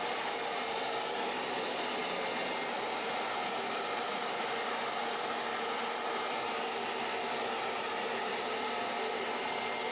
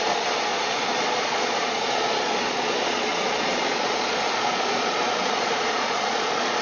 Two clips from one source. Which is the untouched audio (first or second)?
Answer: first